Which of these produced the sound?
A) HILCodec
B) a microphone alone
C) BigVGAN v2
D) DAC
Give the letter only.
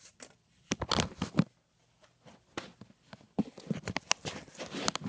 B